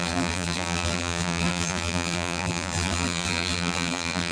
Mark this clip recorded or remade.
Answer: remade